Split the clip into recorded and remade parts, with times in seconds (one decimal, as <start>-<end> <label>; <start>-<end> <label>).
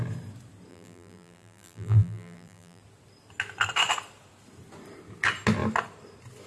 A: 0.0-0.7 recorded; 0.7-2.8 remade; 2.8-6.5 recorded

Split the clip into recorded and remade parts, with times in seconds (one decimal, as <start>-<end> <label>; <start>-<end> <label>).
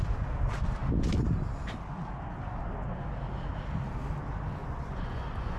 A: 0.0-4.6 recorded; 4.6-5.6 remade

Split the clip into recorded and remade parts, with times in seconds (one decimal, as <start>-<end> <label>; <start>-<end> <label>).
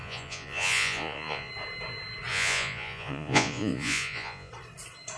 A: 0.0-1.5 remade; 1.5-2.3 recorded; 2.3-4.5 remade; 4.5-5.2 recorded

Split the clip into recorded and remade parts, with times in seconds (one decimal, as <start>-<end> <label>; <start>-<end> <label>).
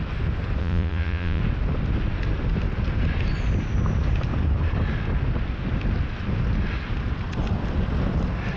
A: 0.0-0.6 recorded; 0.6-1.4 remade; 1.4-8.6 recorded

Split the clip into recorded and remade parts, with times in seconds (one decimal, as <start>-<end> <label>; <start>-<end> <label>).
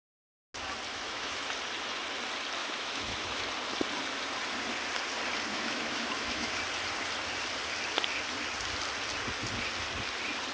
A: 0.0-0.9 recorded; 0.9-1.5 remade; 1.5-2.6 recorded; 2.6-3.4 remade; 3.4-5.5 recorded; 5.5-6.5 remade; 6.5-10.5 recorded